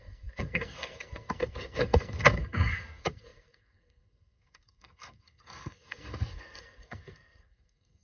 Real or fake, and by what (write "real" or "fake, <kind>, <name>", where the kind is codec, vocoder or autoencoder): fake, codec, SNAC